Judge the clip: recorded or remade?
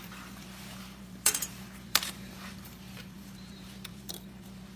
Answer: remade